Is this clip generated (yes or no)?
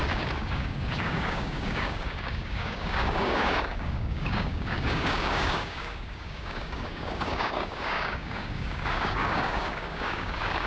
yes